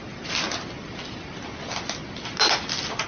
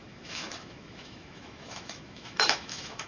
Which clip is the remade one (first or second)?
second